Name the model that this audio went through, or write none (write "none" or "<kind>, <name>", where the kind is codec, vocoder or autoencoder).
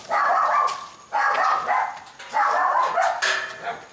none